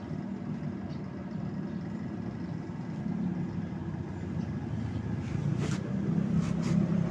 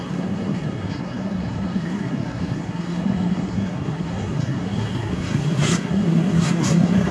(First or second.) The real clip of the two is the first